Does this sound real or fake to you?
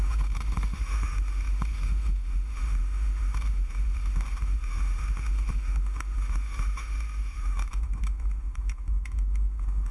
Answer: fake